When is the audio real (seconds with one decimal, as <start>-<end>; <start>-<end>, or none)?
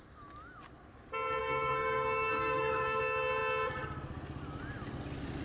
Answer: 0.0-1.4; 3.0-5.4